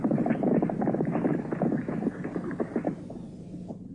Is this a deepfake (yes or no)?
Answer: no